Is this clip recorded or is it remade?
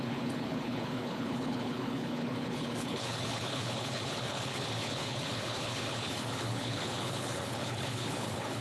remade